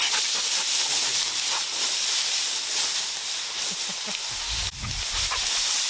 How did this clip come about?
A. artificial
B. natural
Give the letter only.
B